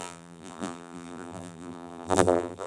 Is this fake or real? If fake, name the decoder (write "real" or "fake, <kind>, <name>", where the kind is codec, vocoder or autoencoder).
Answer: fake, vocoder, BigVGAN v2